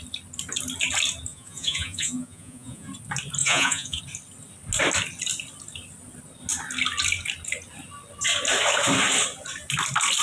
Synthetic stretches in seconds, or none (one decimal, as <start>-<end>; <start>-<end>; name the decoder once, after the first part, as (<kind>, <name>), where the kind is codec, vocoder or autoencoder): 1.3-2.9 (vocoder, Vocos); 3.4-4.0